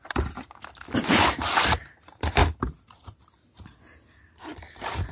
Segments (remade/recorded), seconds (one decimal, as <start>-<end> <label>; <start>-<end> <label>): 0.0-5.1 recorded